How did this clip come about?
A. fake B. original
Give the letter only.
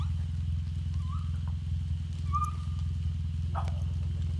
B